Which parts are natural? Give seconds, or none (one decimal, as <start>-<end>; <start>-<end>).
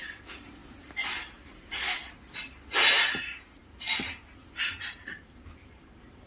0.0-6.3